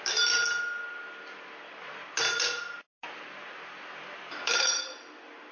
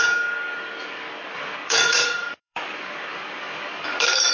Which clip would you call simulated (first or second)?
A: second